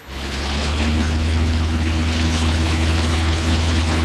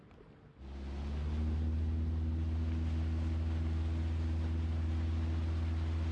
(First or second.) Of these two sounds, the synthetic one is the first